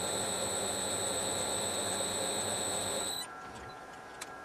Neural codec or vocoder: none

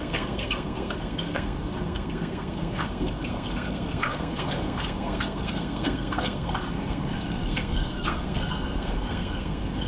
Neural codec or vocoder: codec, SNAC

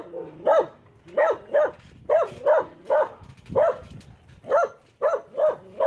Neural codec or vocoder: none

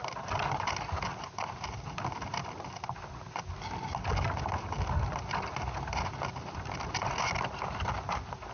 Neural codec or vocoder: none